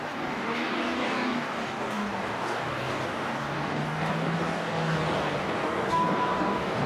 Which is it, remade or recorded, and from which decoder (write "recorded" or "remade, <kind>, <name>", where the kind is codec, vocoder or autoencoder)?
remade, codec, DAC